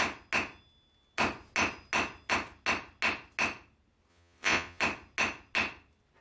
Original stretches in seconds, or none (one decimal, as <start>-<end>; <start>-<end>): 0.0-4.1; 4.8-6.2